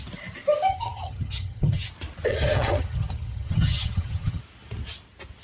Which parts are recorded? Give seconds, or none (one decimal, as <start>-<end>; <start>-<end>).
0.0-0.7; 1.9-2.3; 4.4-5.4

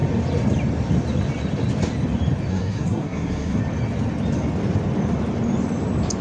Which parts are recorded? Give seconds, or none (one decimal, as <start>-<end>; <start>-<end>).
0.0-2.5; 3.6-6.2

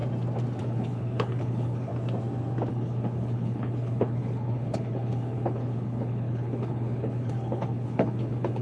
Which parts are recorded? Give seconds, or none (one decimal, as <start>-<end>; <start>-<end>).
0.0-0.6; 1.9-2.7

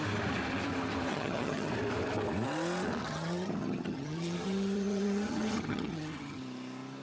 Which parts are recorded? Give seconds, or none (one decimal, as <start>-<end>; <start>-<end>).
0.0-1.1; 1.7-3.0; 6.4-7.0

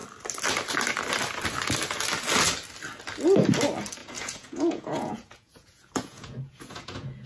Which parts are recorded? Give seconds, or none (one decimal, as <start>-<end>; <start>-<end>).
0.0-4.0

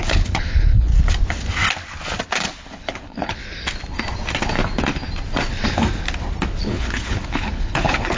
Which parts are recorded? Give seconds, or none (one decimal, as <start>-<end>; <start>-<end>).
0.9-2.3; 3.4-6.6

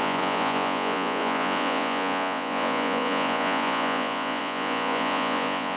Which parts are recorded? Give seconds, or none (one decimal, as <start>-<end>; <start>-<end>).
none